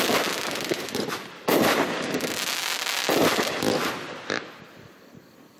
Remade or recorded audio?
recorded